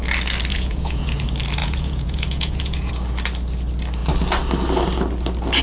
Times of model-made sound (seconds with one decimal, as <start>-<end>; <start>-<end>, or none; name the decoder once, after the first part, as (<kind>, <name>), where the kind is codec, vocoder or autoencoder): 0.5-1.2 (vocoder, Vocos); 1.6-2.9